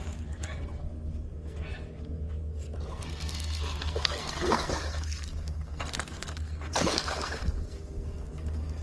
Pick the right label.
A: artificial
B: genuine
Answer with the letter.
A